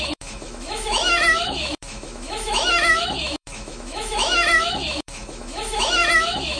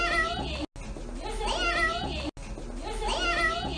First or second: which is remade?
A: first